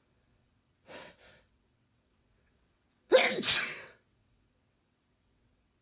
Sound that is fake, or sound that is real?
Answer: fake